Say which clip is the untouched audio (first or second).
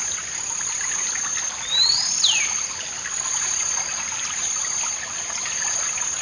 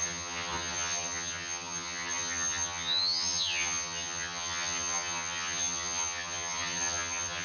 first